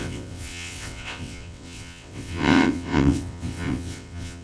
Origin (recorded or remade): remade